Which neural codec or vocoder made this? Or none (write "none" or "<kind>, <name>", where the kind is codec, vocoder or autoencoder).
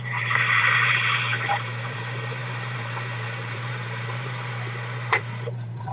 vocoder, BigVGAN v2